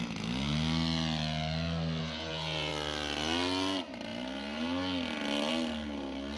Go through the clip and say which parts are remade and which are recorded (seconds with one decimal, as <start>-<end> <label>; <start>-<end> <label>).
0.0-2.0 recorded; 2.0-2.7 remade; 2.7-6.4 recorded